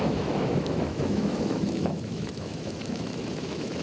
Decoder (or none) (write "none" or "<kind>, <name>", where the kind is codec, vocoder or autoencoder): autoencoder, DAC-VAE